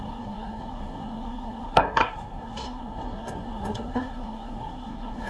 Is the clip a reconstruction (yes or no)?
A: yes